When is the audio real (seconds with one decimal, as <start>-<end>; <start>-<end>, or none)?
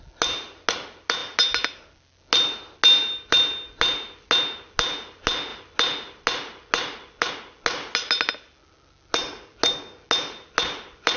0.0-11.2